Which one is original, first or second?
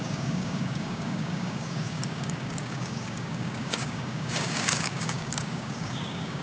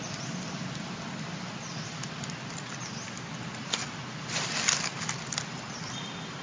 second